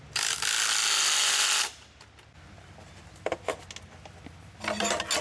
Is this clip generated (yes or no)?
no